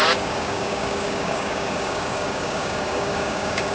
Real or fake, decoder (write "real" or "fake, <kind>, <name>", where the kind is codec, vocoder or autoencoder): fake, codec, DAC